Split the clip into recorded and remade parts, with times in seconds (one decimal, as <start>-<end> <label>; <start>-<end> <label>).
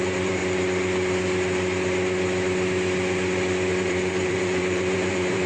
0.0-0.4 remade; 0.4-3.7 recorded; 3.7-5.5 remade